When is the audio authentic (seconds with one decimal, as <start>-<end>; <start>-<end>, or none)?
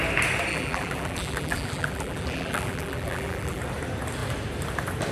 0.0-0.5; 3.6-5.1